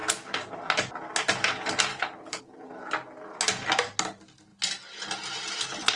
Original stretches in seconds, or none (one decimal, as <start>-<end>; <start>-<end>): 0.0-1.9; 2.4-6.0